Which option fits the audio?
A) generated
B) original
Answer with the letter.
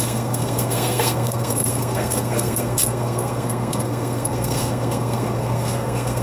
A